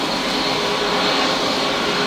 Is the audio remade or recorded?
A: recorded